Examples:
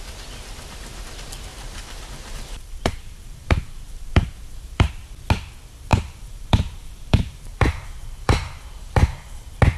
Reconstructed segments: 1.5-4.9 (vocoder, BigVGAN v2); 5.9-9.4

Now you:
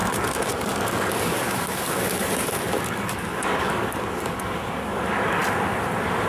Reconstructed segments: 0.0-5.4 (codec, DAC)